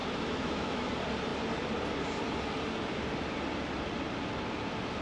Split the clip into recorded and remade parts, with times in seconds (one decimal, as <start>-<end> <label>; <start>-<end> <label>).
0.0-0.9 remade; 0.9-5.0 recorded

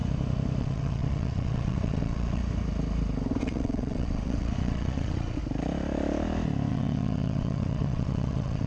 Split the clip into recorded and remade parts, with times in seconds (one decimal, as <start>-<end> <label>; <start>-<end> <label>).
0.0-0.6 recorded; 0.6-2.4 remade; 2.4-3.4 recorded; 3.4-5.4 remade; 5.4-6.7 recorded; 6.7-8.7 remade

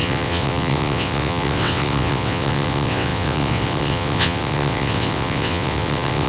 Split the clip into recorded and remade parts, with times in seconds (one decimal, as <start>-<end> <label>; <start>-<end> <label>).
0.0-6.3 remade

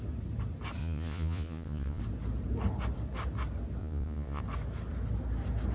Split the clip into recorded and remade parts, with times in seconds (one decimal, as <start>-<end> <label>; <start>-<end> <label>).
0.0-0.8 recorded; 0.8-2.0 remade; 2.0-3.8 recorded; 3.8-4.4 remade; 4.4-5.7 recorded

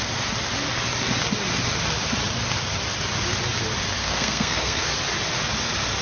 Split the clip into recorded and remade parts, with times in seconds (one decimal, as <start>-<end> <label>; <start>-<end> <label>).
0.0-4.0 recorded; 4.0-4.9 remade; 4.9-6.0 recorded

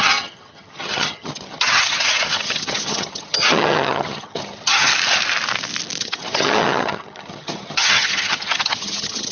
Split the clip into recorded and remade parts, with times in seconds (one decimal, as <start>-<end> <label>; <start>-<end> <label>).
0.0-4.9 remade; 4.9-6.0 recorded; 6.0-9.3 remade